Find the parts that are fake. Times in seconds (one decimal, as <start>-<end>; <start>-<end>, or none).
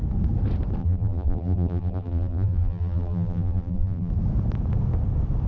0.8-4.1